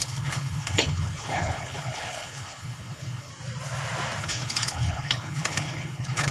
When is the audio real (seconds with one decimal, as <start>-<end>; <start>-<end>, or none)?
3.3-4.2